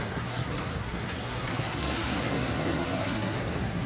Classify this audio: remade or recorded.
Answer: remade